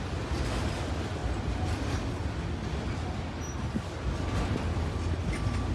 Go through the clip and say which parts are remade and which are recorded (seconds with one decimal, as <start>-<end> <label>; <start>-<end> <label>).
0.0-5.7 recorded